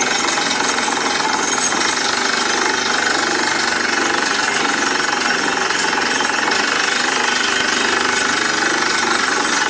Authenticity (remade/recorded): recorded